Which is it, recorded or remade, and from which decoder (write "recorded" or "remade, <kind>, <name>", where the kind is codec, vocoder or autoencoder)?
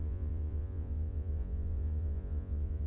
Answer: remade, vocoder, Vocos